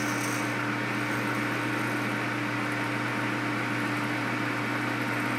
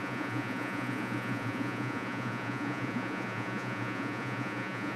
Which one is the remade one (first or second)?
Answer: second